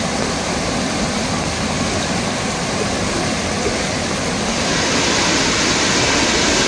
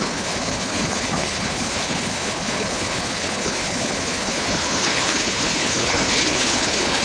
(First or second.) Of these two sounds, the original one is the first